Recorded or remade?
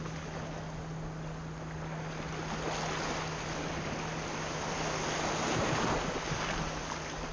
recorded